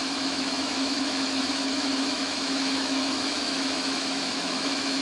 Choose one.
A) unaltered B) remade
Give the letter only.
B